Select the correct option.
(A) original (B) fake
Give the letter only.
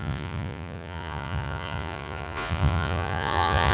B